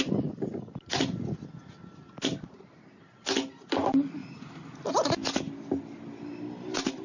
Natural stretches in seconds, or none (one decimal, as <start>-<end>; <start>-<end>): 0.0-7.0

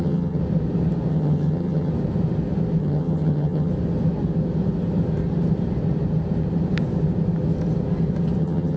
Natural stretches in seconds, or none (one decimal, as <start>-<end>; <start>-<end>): 0.4-1.1; 1.9-2.8; 3.7-8.4

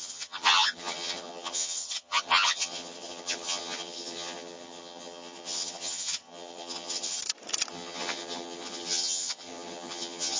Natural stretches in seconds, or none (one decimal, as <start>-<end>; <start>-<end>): 7.2-7.7

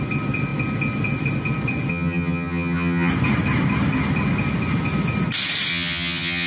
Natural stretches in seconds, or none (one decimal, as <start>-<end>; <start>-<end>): 0.0-1.9; 3.1-5.7

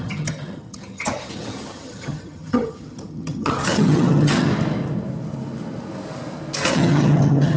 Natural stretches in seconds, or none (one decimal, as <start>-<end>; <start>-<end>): 4.5-6.7

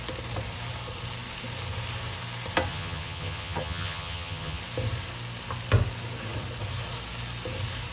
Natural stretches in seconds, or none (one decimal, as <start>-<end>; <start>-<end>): 0.0-2.7; 4.6-7.9

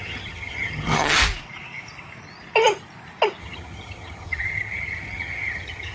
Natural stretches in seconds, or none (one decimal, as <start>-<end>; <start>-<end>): 1.2-3.4

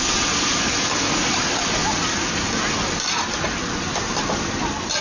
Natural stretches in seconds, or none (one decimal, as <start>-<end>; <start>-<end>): 0.0-5.0